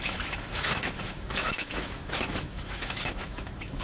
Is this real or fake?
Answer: fake